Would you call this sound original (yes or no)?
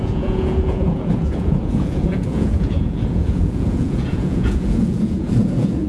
no